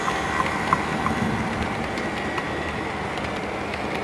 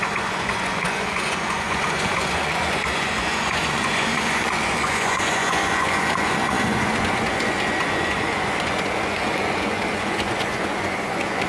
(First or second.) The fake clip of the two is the second